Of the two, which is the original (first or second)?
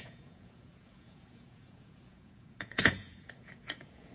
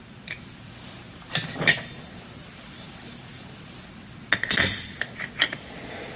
second